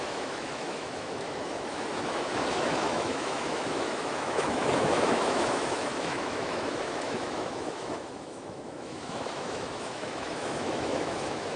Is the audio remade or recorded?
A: remade